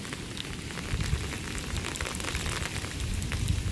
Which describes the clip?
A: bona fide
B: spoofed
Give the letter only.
A